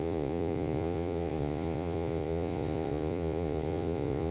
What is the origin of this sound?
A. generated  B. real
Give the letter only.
A